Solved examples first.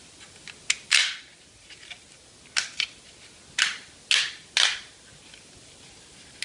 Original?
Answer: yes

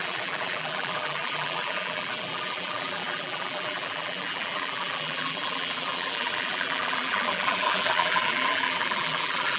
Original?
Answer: no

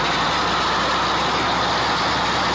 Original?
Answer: yes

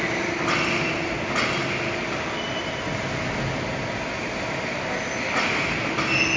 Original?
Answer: yes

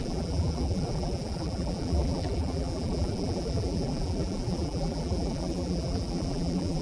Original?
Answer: no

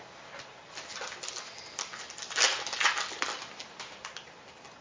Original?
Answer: yes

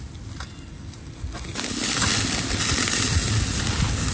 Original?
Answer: yes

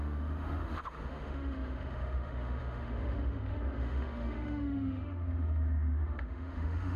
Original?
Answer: no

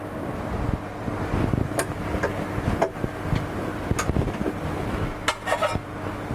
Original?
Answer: yes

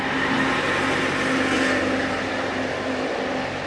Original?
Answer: yes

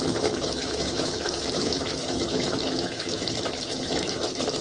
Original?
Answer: no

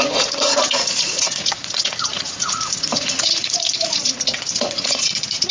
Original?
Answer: no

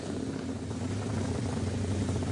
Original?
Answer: yes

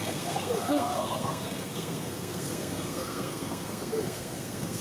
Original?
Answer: no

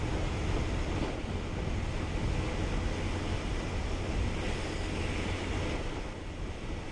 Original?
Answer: yes